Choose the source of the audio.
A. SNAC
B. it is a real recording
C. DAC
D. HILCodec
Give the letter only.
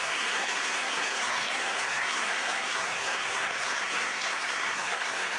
A